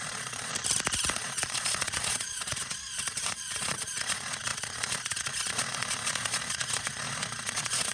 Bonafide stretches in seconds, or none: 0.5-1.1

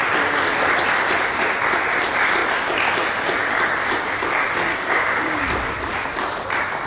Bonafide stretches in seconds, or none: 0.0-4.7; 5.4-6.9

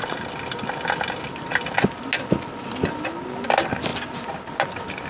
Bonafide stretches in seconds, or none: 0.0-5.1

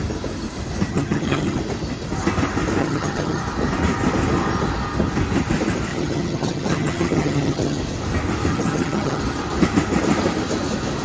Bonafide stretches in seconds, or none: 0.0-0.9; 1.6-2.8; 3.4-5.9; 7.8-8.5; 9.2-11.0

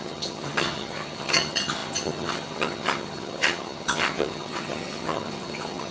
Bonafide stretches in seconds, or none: none

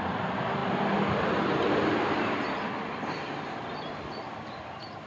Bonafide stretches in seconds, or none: 0.0-5.1

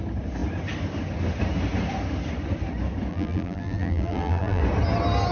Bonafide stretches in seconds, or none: 0.0-3.1; 4.6-5.3

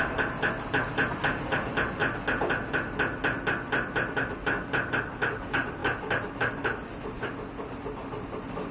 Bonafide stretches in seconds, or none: 0.0-8.7